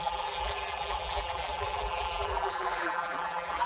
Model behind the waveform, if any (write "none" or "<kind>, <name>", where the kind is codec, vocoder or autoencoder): vocoder, BigVGAN v2